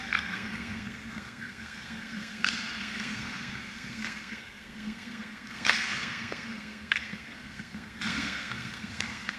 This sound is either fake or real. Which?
fake